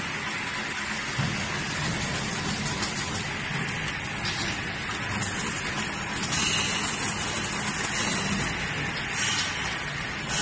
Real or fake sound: real